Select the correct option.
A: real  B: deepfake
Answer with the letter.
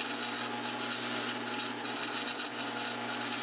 A